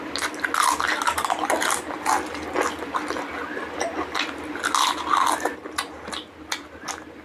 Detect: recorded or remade recorded